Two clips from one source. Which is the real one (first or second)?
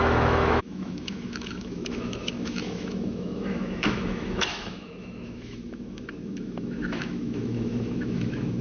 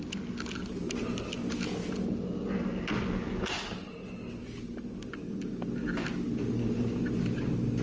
second